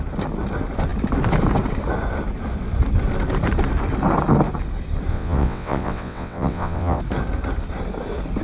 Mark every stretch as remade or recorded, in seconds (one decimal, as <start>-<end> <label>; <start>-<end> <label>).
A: 0.0-5.1 recorded; 5.1-7.0 remade; 7.0-8.4 recorded